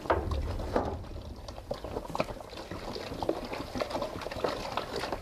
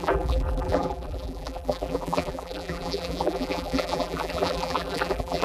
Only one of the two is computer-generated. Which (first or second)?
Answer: second